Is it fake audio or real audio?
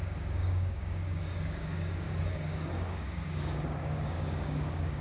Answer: fake